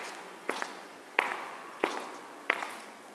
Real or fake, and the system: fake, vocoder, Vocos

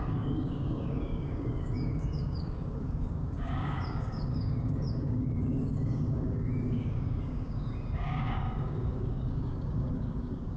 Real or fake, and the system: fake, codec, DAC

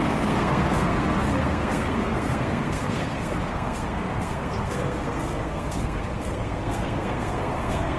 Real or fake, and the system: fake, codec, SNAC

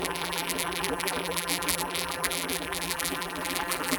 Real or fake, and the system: fake, vocoder, BigVGAN v2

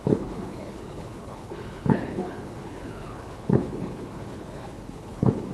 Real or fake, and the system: fake, codec, HILCodec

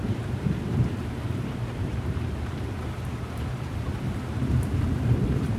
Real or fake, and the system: fake, vocoder, BigVGAN v2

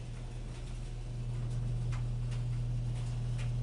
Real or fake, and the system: real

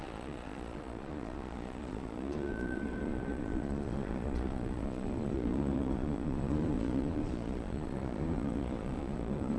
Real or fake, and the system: fake, vocoder, Vocos